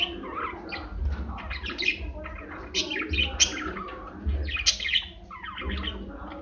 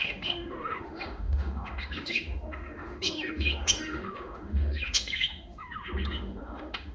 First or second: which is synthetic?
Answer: second